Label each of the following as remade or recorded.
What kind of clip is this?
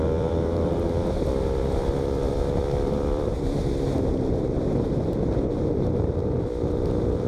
remade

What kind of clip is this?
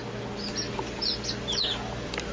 recorded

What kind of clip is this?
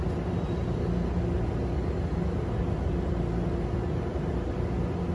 recorded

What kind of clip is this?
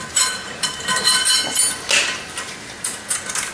recorded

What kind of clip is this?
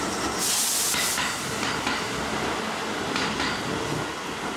recorded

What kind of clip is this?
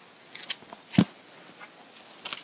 recorded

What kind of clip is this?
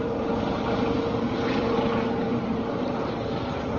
remade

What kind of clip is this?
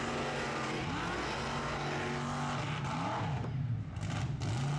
recorded